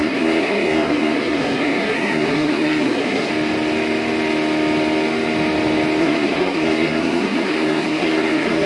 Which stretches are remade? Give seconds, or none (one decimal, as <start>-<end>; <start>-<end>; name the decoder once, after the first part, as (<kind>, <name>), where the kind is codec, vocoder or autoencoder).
0.0-3.3 (codec, SNAC); 6.0-8.7